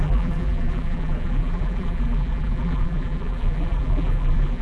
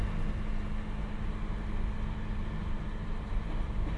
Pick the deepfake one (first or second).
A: first